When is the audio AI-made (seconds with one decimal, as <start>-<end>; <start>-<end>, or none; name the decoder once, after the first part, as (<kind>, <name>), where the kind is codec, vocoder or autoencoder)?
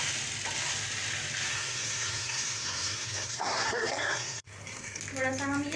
1.5-5.0 (codec, SNAC)